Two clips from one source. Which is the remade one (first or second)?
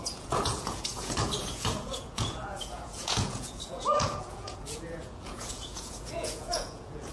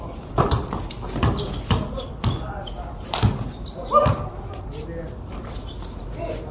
first